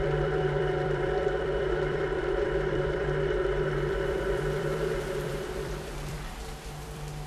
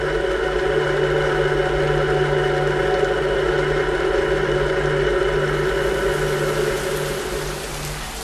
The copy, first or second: first